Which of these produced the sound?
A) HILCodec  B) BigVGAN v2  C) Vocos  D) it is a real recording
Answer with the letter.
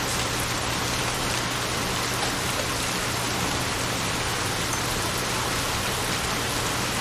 D